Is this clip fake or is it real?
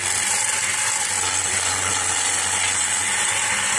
real